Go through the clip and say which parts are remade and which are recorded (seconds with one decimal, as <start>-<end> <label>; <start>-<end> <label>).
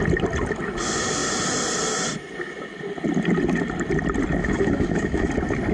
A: 0.0-4.4 recorded; 4.4-5.3 remade; 5.3-5.7 recorded